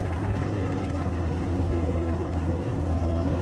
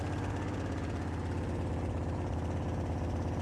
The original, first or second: second